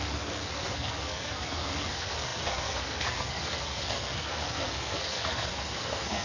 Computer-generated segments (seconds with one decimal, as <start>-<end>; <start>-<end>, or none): 0.0-6.2